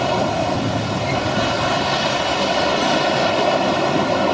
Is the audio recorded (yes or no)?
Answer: yes